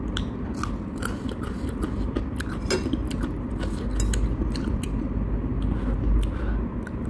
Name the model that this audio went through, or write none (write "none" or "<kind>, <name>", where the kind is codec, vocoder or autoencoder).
none